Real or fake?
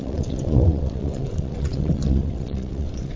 fake